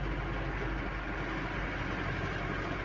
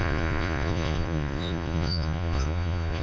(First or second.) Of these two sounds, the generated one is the second